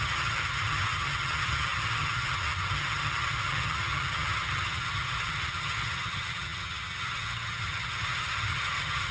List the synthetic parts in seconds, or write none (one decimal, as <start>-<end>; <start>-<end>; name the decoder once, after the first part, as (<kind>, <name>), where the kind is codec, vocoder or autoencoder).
0.0-9.1 (vocoder, HiFi-GAN)